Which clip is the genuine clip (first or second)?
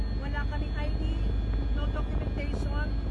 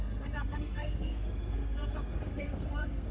first